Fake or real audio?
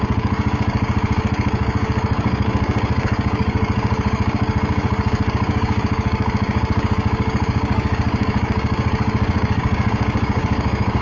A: fake